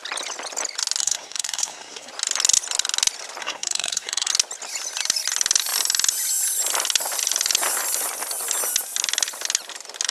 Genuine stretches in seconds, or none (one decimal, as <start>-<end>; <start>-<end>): 0.0-1.0; 2.1-3.4; 4.3-10.1